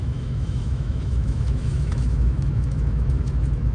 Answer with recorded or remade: remade